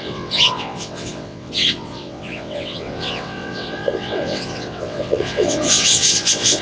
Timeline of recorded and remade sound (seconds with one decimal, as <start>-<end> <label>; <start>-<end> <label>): 0.0-6.6 remade